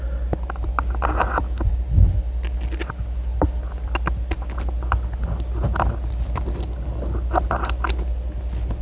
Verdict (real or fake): real